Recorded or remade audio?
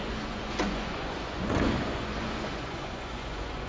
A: remade